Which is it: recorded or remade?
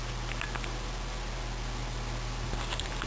recorded